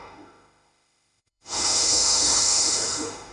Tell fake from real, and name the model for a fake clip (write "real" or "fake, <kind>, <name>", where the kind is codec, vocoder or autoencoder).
fake, autoencoder, DAC-VAE